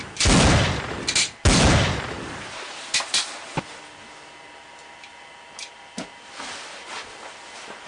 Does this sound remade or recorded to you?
recorded